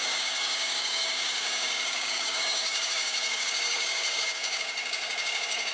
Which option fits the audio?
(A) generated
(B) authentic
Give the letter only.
A